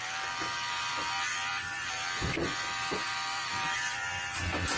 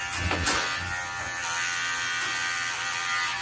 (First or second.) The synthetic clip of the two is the first